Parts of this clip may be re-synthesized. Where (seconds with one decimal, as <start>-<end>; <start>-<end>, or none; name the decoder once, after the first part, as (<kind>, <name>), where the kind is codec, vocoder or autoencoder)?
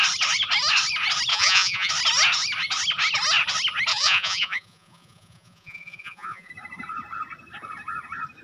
1.3-1.9 (vocoder, Vocos); 3.9-6.5